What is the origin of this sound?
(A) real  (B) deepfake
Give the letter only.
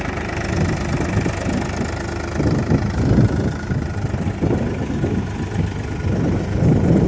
A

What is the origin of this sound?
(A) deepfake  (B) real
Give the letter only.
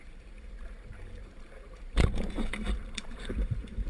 A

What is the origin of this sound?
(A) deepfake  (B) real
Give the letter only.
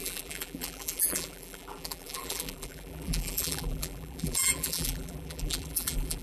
A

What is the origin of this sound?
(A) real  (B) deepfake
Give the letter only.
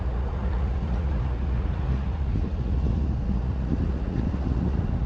B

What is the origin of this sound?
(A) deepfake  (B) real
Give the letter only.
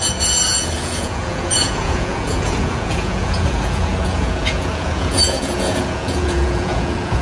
A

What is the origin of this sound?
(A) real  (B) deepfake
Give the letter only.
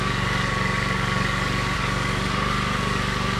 B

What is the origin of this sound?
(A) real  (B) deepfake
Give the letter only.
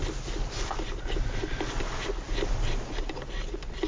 A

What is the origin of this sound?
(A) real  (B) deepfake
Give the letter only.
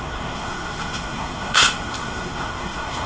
B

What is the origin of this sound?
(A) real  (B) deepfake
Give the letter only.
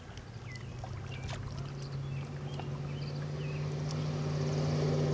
A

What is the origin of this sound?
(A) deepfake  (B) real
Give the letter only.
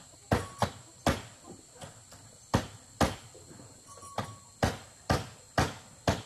B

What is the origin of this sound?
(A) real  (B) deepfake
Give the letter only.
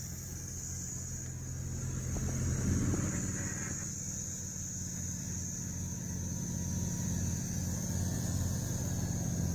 A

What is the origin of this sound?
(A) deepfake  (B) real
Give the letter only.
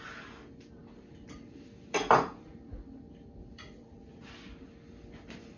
B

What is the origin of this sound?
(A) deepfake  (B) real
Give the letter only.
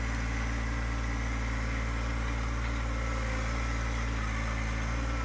B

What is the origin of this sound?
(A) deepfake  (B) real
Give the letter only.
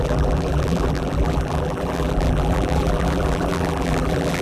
A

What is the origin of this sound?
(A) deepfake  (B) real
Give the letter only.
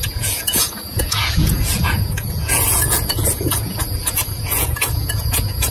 A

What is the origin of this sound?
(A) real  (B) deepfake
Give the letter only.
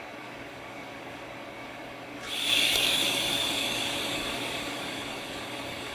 B